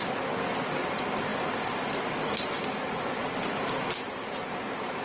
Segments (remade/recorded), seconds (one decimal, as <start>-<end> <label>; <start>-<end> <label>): 0.0-5.0 recorded